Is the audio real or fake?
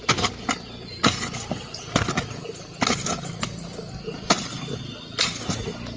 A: real